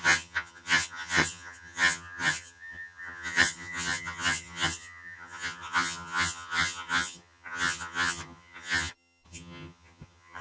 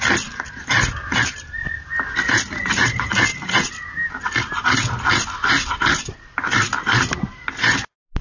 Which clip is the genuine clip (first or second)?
second